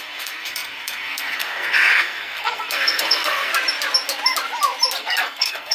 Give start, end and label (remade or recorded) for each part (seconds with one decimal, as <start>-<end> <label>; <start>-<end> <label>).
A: 0.0-3.5 remade; 3.5-5.0 recorded; 5.0-5.7 remade

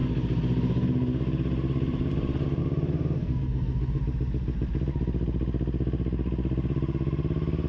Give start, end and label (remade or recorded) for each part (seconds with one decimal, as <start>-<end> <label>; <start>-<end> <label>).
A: 0.0-3.2 recorded; 3.2-4.0 remade; 4.0-7.7 recorded

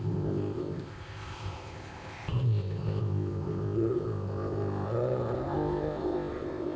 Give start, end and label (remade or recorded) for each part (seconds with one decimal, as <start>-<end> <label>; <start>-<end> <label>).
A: 0.0-6.8 remade

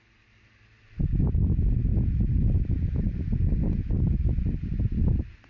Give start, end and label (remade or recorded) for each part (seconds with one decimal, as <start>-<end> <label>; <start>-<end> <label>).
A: 0.0-5.5 recorded